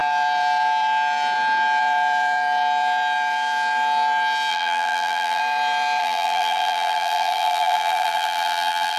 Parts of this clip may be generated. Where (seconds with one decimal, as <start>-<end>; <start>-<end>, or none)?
4.5-5.4; 6.0-9.0